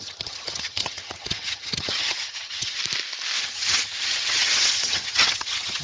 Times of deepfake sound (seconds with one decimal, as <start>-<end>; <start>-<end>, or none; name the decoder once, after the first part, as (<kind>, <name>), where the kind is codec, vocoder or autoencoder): 0.0-2.8 (vocoder, HiFi-GAN); 3.4-5.8